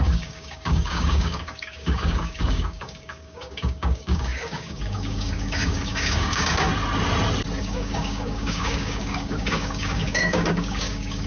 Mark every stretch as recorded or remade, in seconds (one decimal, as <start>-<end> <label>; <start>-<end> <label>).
0.0-6.7 remade; 6.7-7.6 recorded; 7.6-11.3 remade